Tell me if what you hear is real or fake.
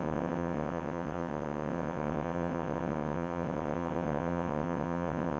fake